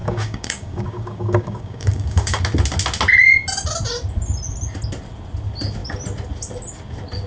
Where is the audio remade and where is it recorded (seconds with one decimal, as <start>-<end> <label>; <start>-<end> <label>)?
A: 0.0-2.4 remade; 2.4-7.3 recorded